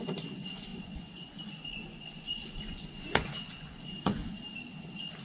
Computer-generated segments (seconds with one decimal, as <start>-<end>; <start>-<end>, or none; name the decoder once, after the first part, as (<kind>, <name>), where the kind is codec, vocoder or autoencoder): 0.0-4.2 (vocoder, Vocos)